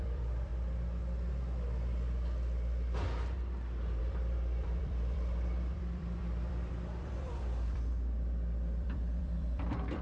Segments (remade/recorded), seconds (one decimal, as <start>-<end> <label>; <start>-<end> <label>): 0.0-0.5 remade; 0.5-4.0 recorded; 4.0-10.0 remade